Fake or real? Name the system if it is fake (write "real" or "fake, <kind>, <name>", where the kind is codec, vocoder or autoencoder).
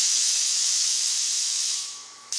fake, autoencoder, DAC-VAE